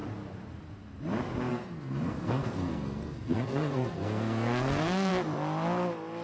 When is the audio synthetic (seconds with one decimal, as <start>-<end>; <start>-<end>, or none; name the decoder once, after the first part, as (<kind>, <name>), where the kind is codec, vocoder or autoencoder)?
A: 1.5-5.1 (codec, SNAC)